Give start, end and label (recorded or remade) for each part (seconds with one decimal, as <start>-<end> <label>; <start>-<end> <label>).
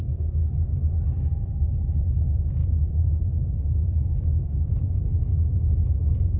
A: 0.0-0.4 remade; 0.4-2.0 recorded; 2.0-6.4 remade